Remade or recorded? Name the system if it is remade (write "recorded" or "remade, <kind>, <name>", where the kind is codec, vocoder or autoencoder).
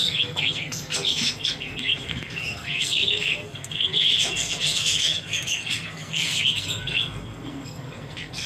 remade, codec, SNAC